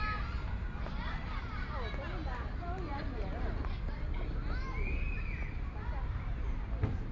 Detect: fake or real real